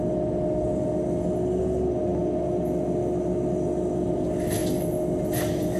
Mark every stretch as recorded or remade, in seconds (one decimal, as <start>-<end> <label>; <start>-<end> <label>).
0.0-5.8 recorded